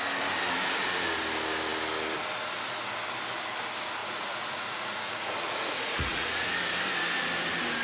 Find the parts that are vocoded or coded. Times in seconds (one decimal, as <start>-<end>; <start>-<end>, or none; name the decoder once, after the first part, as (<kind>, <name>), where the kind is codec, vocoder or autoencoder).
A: 4.0-6.5 (vocoder, Vocos)